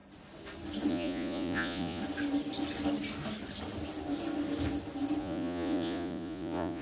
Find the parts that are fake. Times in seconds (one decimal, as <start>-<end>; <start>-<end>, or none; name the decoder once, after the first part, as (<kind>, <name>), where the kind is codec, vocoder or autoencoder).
0.9-2.0 (vocoder, Vocos); 5.2-6.8